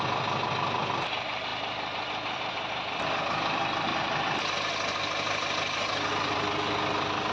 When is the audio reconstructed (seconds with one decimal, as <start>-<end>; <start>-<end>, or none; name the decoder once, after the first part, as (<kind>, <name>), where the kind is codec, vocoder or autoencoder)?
3.9-4.4 (vocoder, BigVGAN v2)